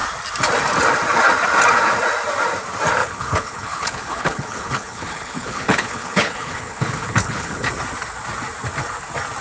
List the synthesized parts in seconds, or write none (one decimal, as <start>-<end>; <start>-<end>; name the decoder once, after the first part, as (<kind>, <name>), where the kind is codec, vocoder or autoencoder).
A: 3.0-7.7 (codec, HILCodec)